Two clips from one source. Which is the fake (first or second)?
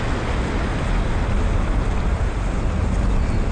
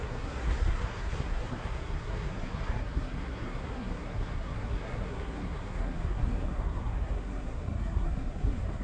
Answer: second